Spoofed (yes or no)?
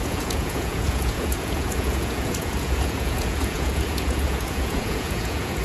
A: yes